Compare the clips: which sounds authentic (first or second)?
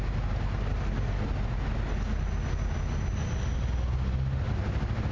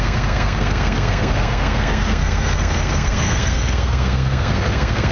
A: first